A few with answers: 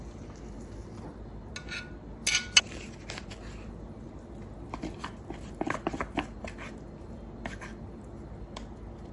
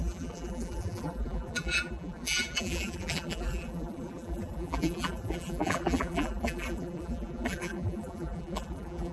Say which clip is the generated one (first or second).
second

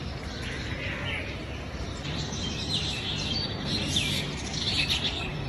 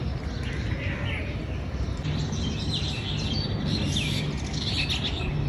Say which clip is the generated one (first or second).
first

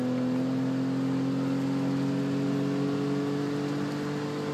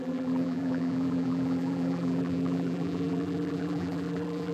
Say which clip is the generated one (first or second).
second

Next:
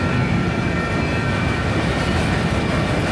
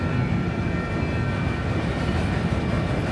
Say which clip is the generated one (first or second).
first